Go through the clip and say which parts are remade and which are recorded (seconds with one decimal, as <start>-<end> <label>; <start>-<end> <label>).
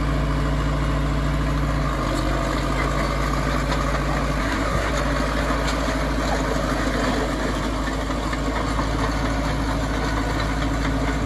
0.0-4.4 recorded; 4.4-4.9 remade; 4.9-11.3 recorded